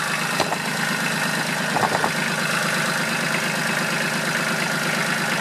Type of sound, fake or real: real